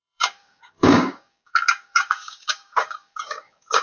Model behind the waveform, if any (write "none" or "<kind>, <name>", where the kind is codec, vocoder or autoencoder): codec, DAC